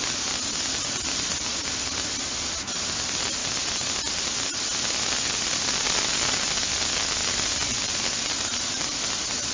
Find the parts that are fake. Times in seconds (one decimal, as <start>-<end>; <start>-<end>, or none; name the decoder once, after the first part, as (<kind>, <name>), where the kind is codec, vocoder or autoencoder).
none